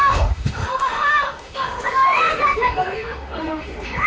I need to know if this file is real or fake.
fake